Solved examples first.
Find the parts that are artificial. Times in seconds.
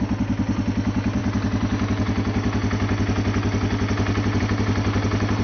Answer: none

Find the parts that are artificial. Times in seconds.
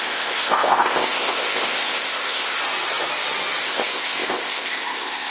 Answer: 0.0-2.6 (codec, ZipCodec); 3.6-5.3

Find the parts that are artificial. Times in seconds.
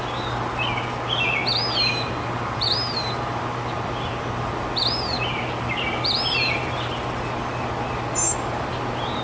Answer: none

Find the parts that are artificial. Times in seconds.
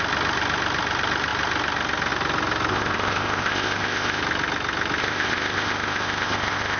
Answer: 2.7-4.2 (codec, ZipCodec); 5.0-6.8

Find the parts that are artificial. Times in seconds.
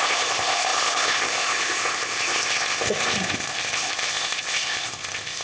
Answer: 0.0-5.4 (codec, ZipCodec)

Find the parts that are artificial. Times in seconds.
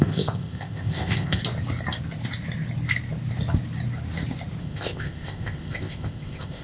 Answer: 0.0-1.4 (codec, ZipCodec); 4.6-6.6